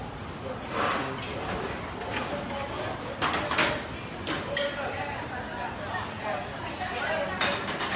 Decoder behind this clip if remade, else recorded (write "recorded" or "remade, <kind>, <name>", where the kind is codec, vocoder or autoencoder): remade, vocoder, BigVGAN v2